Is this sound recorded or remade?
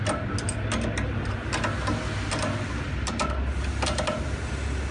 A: recorded